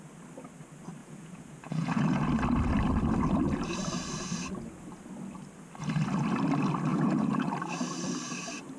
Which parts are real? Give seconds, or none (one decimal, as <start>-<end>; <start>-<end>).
0.0-1.0; 2.3-6.9; 7.5-8.8